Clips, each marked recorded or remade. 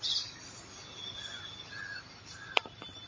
recorded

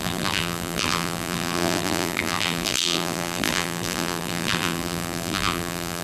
remade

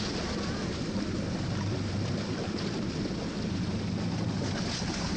recorded